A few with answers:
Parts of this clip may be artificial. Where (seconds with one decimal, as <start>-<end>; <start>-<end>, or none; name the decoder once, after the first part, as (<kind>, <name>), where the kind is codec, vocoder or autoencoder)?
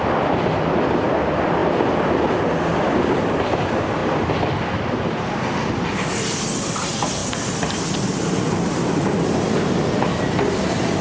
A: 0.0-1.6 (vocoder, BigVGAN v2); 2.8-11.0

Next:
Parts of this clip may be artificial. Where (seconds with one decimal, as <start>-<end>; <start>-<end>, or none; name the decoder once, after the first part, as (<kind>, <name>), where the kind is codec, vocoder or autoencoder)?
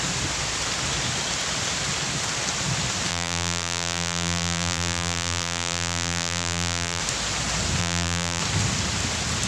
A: 3.1-7.0 (vocoder, BigVGAN v2); 7.8-8.4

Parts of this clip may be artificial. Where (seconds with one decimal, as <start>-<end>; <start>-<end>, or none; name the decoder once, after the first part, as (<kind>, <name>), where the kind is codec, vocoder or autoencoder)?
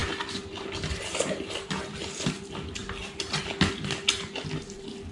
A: none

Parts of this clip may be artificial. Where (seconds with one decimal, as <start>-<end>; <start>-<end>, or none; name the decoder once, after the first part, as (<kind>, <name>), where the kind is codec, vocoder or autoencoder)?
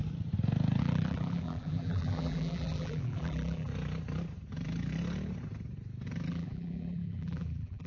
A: 0.8-3.7 (vocoder, BigVGAN v2); 6.3-7.9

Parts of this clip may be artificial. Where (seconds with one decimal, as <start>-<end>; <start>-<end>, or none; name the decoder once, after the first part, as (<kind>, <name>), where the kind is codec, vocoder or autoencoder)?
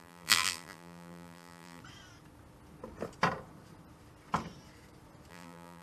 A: 0.0-1.8 (vocoder, BigVGAN v2); 5.3-5.8